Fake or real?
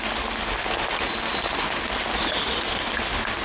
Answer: real